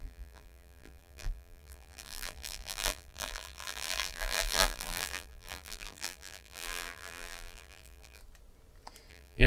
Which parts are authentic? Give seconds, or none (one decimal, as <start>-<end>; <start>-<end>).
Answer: 8.2-9.1